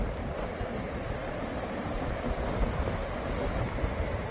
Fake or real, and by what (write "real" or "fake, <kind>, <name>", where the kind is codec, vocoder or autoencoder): real